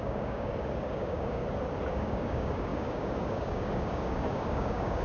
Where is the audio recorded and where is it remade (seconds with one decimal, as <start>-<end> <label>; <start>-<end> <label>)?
0.0-1.4 remade; 1.4-1.9 recorded; 1.9-5.0 remade